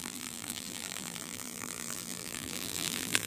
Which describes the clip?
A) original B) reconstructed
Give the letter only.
B